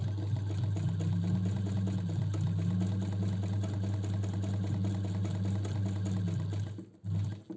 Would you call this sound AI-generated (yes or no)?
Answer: no